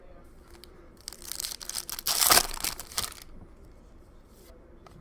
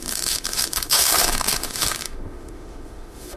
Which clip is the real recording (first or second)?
first